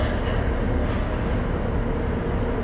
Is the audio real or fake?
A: real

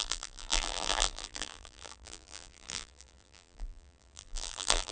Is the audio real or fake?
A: fake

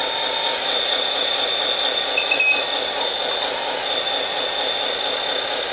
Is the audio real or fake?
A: real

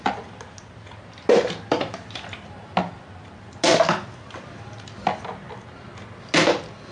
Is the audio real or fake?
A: real